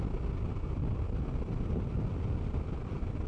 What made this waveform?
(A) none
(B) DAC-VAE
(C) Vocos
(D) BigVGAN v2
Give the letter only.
A